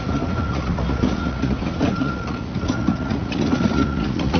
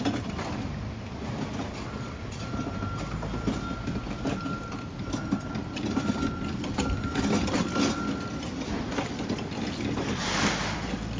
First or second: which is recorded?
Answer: second